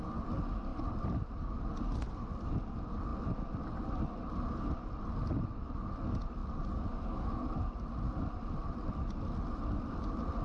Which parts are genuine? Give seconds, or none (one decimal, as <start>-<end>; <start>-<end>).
0.0-10.4